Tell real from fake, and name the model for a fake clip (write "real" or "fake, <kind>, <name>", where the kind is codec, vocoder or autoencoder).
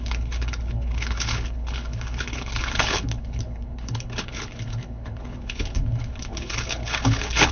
fake, codec, HILCodec